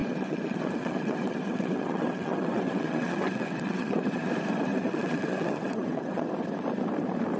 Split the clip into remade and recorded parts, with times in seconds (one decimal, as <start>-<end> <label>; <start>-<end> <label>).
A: 0.0-4.3 remade; 4.3-4.7 recorded; 4.7-6.3 remade; 6.3-7.4 recorded